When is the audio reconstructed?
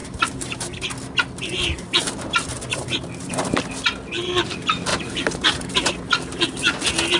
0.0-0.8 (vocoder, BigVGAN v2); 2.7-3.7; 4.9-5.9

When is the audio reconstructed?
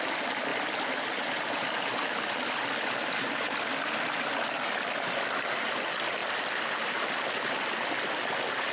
none